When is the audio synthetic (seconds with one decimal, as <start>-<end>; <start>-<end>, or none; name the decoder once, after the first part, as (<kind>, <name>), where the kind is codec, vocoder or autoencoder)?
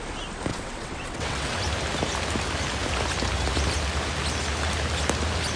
0.5-1.6 (vocoder, WaveNeXt)